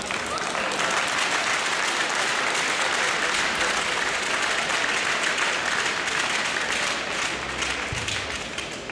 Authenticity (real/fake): real